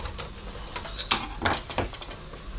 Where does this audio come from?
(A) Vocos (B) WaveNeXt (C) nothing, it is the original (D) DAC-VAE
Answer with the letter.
C